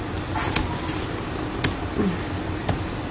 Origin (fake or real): real